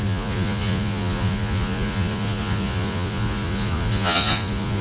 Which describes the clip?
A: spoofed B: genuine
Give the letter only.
A